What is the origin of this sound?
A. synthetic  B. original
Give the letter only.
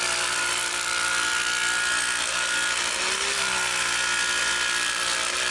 B